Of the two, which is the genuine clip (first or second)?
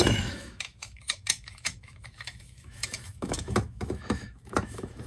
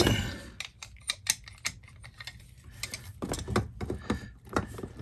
second